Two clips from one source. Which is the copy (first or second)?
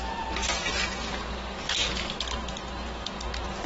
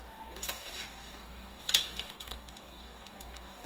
second